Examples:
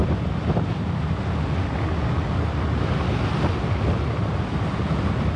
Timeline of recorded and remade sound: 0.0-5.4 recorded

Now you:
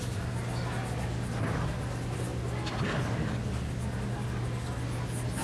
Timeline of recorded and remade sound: 0.0-5.4 recorded